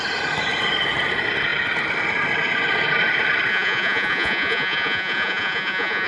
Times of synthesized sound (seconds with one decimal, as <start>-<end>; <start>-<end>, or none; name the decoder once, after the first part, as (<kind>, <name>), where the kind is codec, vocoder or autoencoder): 3.5-6.1 (vocoder, Vocos)